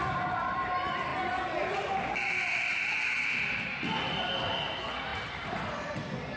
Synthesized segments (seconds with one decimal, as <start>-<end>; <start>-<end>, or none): none